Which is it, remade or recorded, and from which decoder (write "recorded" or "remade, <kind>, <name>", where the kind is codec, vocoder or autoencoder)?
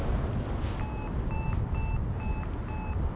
recorded